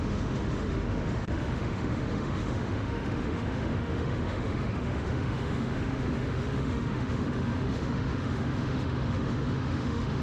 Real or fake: fake